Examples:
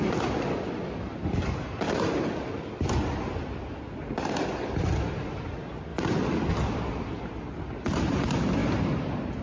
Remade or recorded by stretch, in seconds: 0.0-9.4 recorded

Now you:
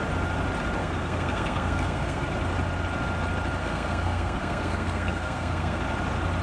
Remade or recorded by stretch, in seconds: 0.0-0.8 recorded; 0.8-2.2 remade; 2.2-3.6 recorded; 3.6-5.8 remade; 5.8-6.4 recorded

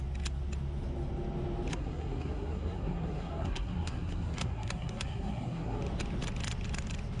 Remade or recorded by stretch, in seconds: 0.0-1.7 recorded; 1.7-5.8 remade; 5.8-7.2 recorded

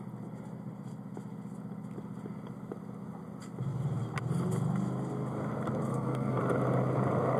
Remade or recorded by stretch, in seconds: 0.0-5.9 recorded; 5.9-6.4 remade; 6.4-7.4 recorded

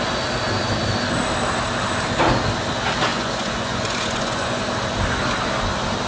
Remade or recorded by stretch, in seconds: 0.0-3.1 recorded; 3.1-4.6 remade; 4.6-6.1 recorded

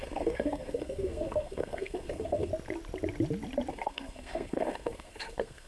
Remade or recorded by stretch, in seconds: 0.0-2.5 remade; 2.5-3.7 recorded; 3.7-5.7 remade

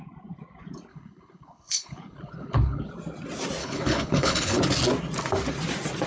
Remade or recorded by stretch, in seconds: 0.0-0.9 recorded; 0.9-2.9 remade; 2.9-3.6 recorded; 3.6-4.6 remade; 4.6-6.1 recorded